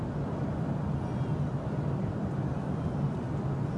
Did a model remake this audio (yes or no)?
no